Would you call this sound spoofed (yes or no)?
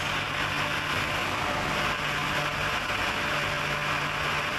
no